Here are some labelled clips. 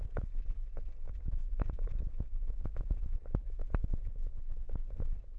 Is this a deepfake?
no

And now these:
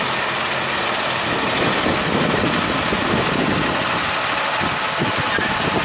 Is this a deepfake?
no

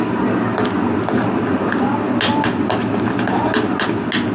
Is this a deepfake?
no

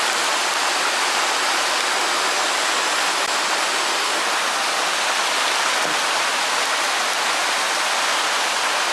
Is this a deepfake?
no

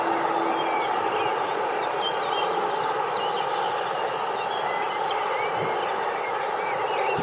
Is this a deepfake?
no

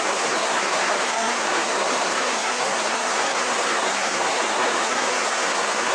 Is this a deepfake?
yes